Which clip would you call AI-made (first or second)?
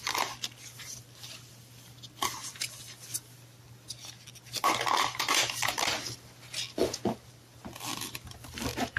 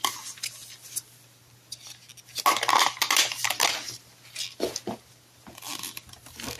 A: first